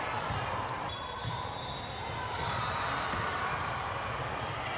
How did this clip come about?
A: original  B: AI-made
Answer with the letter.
A